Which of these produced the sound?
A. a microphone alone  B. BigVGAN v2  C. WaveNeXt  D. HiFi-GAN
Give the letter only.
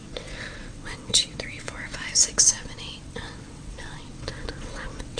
C